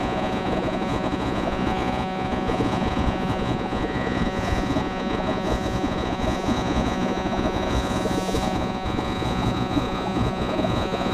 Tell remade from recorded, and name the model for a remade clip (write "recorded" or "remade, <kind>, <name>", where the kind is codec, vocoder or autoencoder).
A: remade, vocoder, Vocos